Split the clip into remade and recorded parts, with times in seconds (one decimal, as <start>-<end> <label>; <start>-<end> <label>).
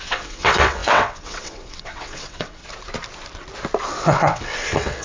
0.0-2.6 remade; 2.6-3.9 recorded; 3.9-5.0 remade